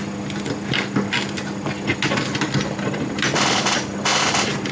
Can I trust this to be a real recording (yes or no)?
yes